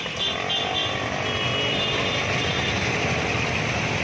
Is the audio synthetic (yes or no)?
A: no